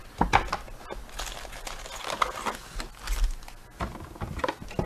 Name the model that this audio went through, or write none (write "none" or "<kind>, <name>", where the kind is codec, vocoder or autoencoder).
none